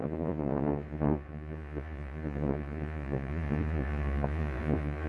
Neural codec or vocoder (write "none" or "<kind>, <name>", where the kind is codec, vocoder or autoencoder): vocoder, Vocos